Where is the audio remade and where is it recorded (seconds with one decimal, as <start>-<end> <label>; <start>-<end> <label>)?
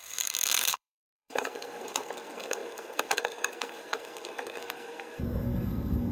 0.0-6.1 remade